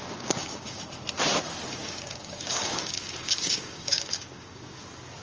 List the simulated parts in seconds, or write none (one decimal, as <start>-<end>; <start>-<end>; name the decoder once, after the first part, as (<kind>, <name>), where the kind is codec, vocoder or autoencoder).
0.0-0.8 (codec, DAC); 1.7-4.8